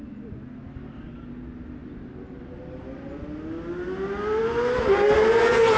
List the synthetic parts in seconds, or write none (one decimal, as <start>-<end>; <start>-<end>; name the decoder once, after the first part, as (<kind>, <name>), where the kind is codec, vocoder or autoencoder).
none